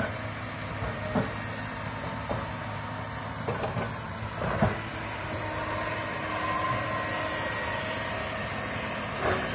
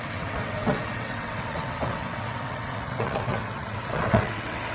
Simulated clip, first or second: second